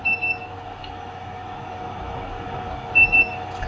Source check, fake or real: fake